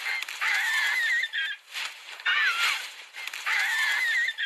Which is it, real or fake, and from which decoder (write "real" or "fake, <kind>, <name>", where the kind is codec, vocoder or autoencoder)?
real